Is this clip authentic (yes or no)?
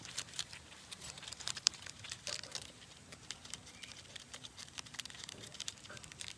no